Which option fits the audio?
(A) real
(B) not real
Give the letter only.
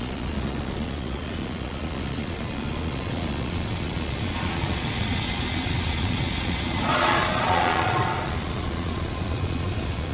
B